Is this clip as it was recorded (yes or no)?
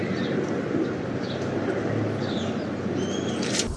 no